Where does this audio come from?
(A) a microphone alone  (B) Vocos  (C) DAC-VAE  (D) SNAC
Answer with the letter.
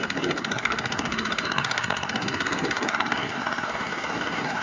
D